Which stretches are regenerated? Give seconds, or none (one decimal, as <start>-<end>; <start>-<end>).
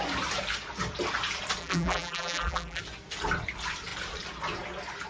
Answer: 1.6-2.8